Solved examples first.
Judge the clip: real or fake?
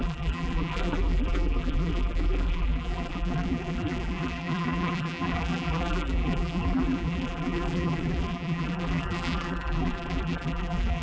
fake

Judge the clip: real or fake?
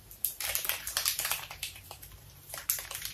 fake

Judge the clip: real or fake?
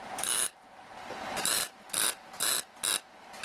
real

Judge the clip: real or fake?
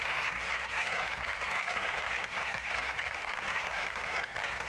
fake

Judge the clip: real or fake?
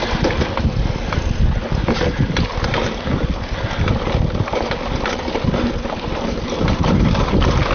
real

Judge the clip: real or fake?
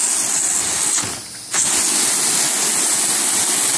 real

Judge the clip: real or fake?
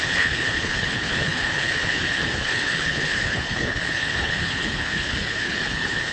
fake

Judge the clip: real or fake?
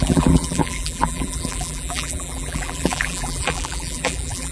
fake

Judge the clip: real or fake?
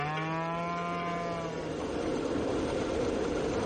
real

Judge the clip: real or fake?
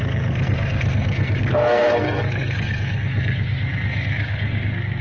fake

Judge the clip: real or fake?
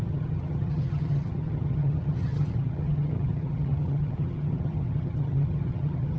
fake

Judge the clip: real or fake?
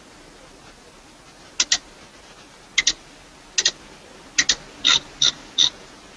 real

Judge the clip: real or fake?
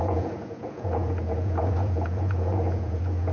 fake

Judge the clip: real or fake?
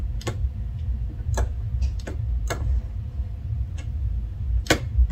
real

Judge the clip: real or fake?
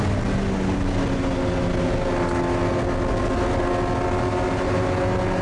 real